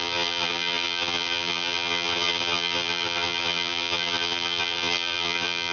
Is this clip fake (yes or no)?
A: yes